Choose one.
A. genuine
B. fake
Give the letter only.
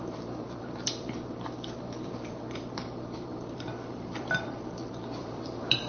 B